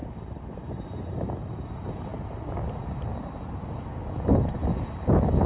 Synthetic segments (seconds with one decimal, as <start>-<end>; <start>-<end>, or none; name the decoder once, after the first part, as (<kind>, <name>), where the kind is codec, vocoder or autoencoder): none